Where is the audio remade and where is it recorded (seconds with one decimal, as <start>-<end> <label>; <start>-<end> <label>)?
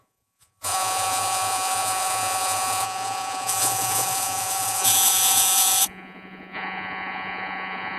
0.0-8.0 remade